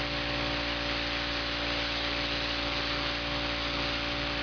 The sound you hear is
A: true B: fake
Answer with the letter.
A